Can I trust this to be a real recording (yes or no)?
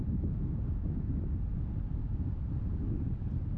yes